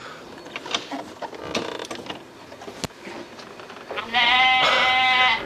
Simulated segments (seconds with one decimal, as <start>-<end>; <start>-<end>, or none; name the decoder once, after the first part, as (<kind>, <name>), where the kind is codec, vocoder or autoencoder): none